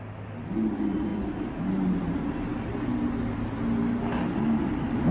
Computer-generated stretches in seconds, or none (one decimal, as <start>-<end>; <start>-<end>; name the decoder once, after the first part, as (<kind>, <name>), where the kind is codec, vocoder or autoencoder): none